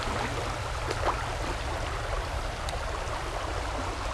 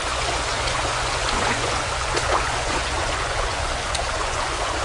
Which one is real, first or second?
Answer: first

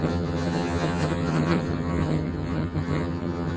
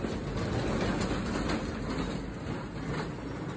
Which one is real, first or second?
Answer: second